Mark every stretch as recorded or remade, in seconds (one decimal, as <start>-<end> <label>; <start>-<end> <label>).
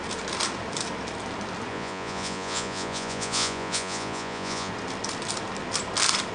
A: 0.0-1.7 recorded; 1.7-4.7 remade; 4.7-6.3 recorded